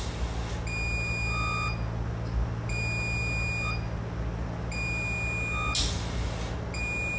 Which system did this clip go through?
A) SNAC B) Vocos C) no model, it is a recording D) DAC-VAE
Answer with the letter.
C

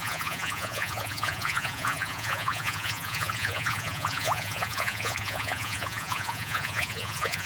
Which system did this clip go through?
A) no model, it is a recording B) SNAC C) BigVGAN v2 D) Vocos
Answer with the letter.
D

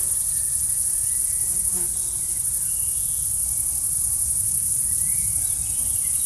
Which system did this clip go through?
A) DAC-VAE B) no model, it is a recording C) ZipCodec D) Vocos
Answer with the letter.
D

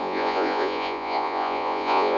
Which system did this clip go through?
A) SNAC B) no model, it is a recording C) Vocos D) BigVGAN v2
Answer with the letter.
C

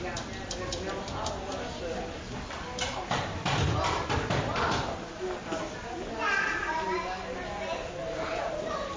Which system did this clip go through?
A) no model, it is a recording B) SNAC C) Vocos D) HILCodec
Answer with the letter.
A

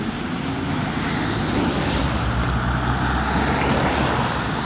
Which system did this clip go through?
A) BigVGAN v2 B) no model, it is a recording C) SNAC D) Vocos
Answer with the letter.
B